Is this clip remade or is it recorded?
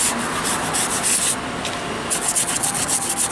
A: recorded